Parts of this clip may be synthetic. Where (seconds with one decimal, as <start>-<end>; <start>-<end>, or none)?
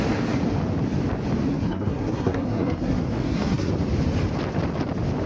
1.5-3.7